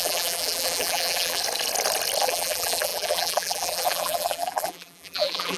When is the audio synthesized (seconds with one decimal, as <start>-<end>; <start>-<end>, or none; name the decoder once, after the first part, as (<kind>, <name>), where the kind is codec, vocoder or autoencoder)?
0.0-1.4 (vocoder, BigVGAN v2); 2.2-5.6